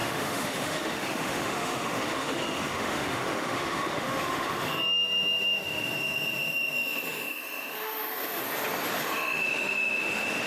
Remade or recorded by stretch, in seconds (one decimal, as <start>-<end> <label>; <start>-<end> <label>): 0.0-8.4 remade; 8.4-9.0 recorded; 9.0-10.5 remade

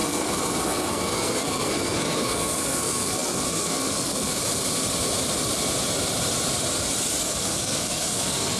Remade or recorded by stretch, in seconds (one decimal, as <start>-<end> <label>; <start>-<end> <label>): 0.0-4.4 remade; 4.4-7.2 recorded; 7.2-8.6 remade

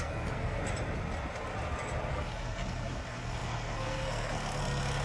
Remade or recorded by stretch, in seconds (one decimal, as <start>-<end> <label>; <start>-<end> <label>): 0.0-0.6 remade; 0.6-2.1 recorded; 2.1-5.0 remade

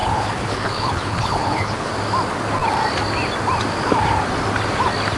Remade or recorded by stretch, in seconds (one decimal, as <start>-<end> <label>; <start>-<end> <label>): 0.0-1.9 remade; 1.9-5.2 recorded

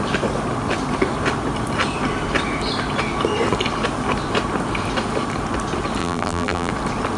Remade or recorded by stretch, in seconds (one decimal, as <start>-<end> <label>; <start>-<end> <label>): 0.0-6.0 recorded; 6.0-6.7 remade; 6.7-7.2 recorded

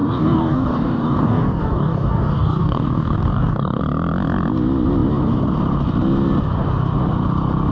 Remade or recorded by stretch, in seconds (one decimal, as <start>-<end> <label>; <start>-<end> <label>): 0.0-3.8 remade; 3.8-7.7 recorded